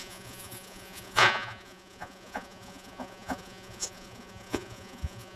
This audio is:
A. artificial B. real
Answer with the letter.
A